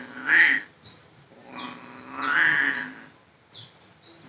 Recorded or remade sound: recorded